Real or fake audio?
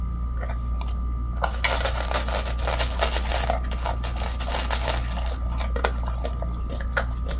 real